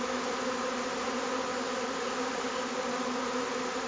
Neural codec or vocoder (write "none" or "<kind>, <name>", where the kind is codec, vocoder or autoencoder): none